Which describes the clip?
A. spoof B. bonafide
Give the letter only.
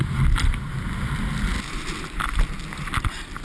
B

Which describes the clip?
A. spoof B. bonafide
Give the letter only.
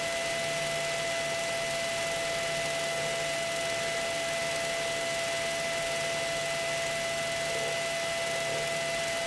B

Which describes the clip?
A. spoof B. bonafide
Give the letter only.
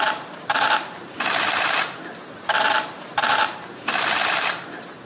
A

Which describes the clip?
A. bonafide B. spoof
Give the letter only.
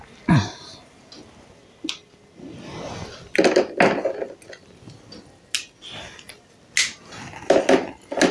A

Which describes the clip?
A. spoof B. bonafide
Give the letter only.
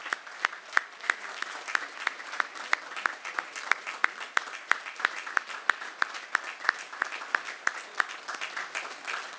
B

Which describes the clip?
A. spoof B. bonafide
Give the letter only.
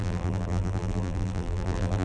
A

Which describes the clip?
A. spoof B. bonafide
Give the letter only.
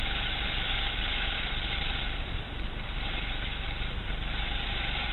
A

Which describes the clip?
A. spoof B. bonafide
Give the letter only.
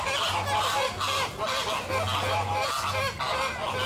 B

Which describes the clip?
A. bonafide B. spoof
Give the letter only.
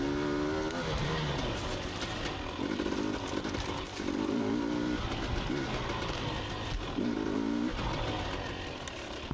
A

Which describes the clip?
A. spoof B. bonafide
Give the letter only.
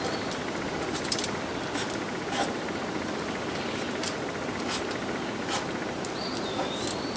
B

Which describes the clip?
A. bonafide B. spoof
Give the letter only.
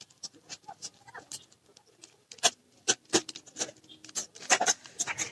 B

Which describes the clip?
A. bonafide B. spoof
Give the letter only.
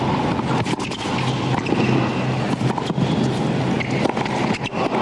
A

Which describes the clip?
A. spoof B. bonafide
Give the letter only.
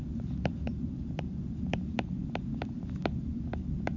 A